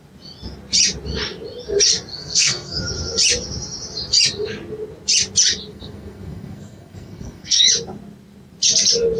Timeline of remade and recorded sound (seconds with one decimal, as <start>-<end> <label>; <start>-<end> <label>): 0.0-2.1 recorded; 2.1-2.8 remade; 2.8-5.7 recorded; 5.7-7.7 remade; 7.7-9.2 recorded